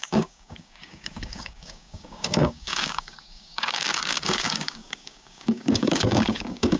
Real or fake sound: fake